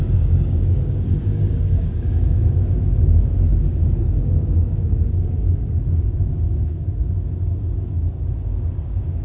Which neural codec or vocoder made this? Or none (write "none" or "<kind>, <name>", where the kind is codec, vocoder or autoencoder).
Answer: codec, DAC